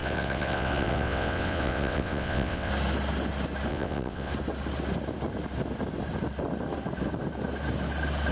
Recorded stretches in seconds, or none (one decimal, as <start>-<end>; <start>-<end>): 2.7-3.7; 4.3-8.3